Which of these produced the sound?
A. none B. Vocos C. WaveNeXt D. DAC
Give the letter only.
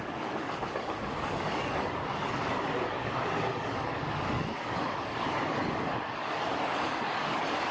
D